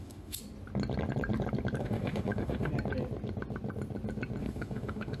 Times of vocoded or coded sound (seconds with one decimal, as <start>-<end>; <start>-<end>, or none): 0.0-0.4; 1.8-2.7; 4.4-5.2